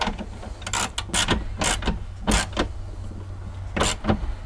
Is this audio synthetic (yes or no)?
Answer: no